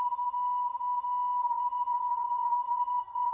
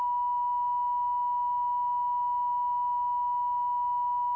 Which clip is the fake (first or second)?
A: first